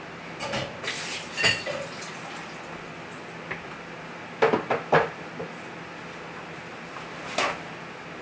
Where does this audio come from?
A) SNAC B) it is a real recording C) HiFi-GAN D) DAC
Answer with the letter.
B